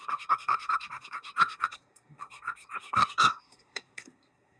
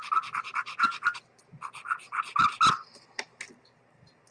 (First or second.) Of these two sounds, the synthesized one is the first